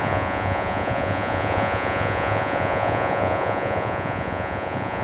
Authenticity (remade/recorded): remade